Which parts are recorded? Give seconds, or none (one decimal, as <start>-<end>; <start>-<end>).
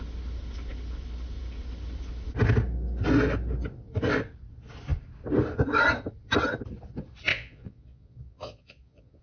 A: 0.0-7.3